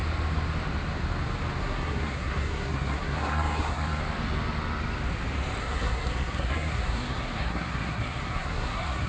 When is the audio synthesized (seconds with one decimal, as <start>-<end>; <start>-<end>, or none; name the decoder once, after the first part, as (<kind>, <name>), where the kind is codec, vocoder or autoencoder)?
1.6-4.0 (codec, SNAC); 5.6-9.1